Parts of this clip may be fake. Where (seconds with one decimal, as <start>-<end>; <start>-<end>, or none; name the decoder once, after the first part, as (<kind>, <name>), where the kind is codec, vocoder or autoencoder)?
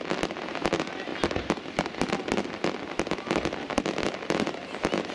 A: none